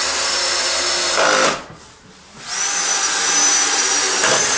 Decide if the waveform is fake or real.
real